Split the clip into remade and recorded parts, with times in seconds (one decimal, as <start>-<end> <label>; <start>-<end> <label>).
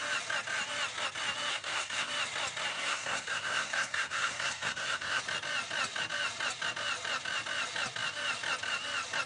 0.0-1.5 recorded; 1.5-2.1 remade; 2.1-2.7 recorded; 2.7-5.2 remade; 5.2-9.3 recorded